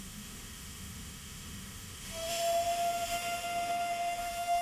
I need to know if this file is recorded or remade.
remade